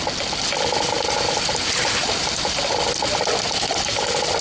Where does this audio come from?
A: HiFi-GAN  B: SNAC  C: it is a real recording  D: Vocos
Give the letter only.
C